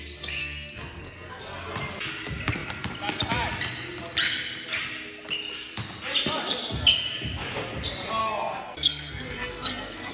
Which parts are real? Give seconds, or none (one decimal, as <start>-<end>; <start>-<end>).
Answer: 0.0-0.4; 1.4-8.2